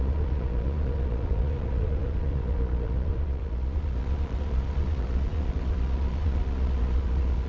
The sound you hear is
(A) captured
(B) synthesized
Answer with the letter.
B